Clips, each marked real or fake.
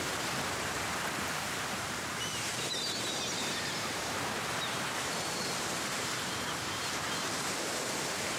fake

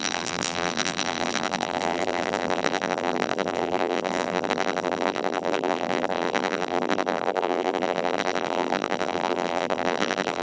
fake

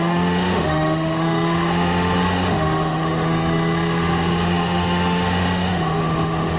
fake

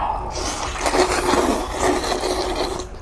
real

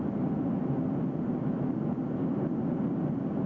real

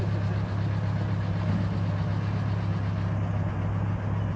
real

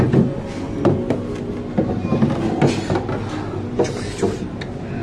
real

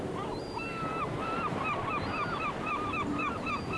fake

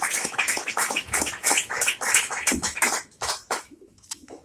fake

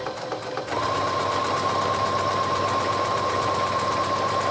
real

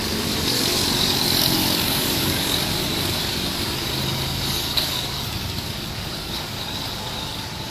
fake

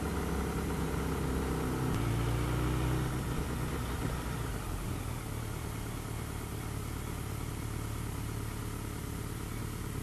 real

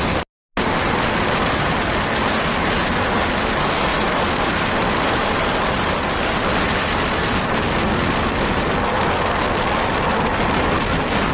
real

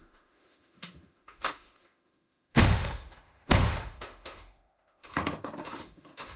fake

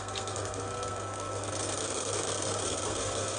fake